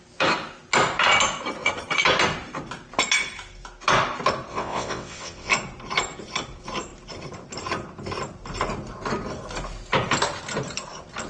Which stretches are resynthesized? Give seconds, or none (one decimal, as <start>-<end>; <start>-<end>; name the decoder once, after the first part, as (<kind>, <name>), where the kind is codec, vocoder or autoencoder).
4.5-5.5 (vocoder, WaveNeXt)